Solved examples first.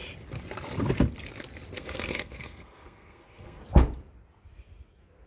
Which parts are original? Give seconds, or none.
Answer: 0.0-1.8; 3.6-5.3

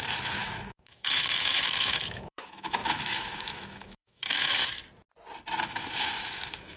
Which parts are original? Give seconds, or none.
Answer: 4.8-5.6

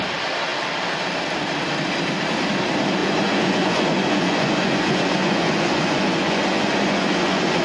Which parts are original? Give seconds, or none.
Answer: 0.0-3.0